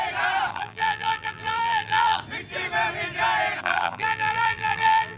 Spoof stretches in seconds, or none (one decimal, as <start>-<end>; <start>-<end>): 0.5-2.2; 3.6-5.2